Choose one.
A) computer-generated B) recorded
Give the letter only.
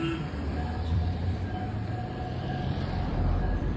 A